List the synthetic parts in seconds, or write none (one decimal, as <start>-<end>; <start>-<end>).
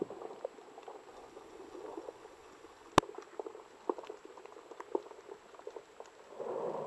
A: 1.1-2.9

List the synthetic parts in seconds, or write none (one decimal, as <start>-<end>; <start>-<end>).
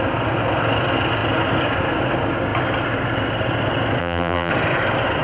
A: 4.0-4.5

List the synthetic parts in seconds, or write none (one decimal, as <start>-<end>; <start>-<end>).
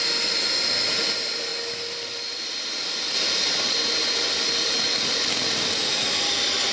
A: none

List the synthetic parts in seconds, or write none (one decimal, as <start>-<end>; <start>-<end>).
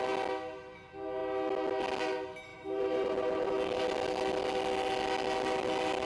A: 2.5-3.5